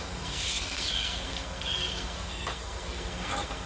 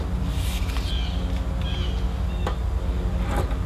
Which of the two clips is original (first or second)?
second